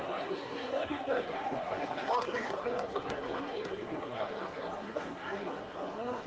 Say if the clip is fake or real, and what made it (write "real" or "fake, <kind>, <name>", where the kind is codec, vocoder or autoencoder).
fake, codec, SNAC